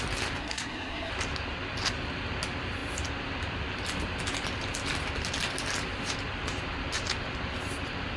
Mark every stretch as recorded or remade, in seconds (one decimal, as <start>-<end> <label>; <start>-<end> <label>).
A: 0.0-0.4 recorded; 0.4-1.1 remade; 1.1-8.2 recorded